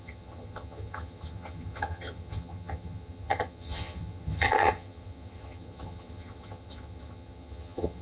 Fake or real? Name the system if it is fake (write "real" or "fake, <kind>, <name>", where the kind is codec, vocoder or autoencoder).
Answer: fake, vocoder, HiFi-GAN